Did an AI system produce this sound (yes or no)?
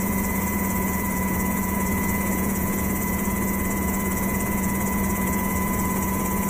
yes